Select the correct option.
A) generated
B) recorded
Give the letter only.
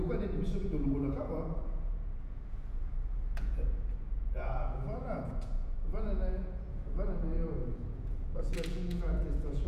A